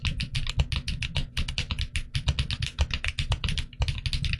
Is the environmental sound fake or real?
real